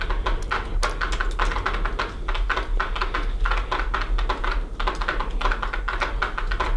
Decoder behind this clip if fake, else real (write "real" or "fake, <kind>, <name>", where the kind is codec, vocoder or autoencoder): real